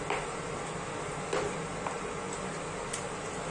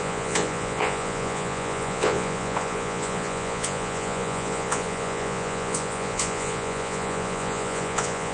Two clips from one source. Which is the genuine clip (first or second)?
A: first